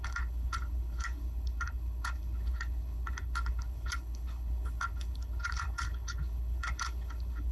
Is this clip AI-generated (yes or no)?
yes